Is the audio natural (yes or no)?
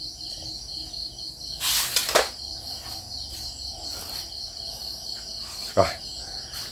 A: yes